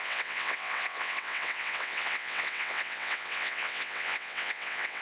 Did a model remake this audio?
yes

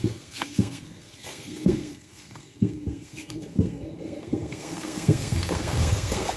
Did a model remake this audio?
yes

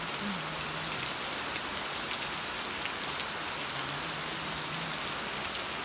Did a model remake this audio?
no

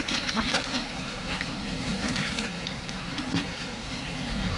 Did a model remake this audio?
yes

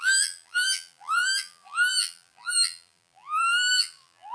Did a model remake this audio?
yes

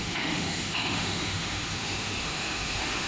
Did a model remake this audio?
yes